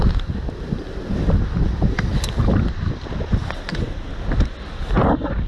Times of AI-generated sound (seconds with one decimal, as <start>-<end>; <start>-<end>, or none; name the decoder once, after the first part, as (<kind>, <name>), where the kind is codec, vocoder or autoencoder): none